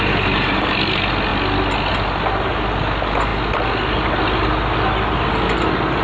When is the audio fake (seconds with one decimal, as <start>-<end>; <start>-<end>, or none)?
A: none